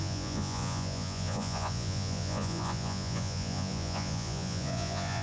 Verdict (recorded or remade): remade